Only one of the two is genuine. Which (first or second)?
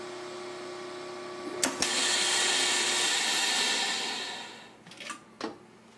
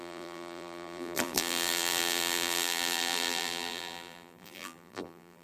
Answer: first